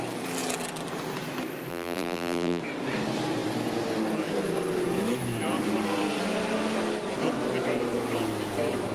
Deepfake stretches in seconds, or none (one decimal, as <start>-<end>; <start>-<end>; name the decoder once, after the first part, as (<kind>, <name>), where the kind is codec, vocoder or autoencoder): 1.7-2.6 (vocoder, BigVGAN v2)